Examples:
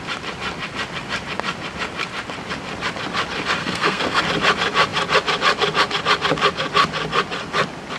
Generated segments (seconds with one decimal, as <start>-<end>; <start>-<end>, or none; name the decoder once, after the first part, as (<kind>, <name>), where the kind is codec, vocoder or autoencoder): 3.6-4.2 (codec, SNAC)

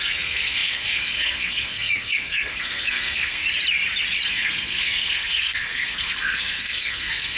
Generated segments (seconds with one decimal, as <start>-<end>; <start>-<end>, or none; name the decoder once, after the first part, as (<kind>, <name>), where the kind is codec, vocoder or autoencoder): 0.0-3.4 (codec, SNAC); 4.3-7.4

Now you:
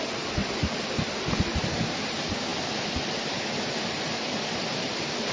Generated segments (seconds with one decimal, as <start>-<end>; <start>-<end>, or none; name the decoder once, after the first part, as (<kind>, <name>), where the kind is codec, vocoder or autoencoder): 0.4-1.3 (vocoder, BigVGAN v2); 2.5-4.1

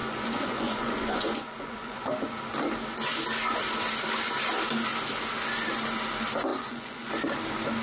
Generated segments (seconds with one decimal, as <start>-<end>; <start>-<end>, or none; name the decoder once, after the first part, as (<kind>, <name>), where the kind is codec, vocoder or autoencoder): 0.0-2.1 (vocoder, Vocos); 6.5-7.1